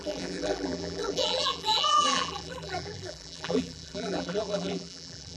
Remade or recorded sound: remade